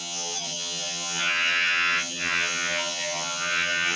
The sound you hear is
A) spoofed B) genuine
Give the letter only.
A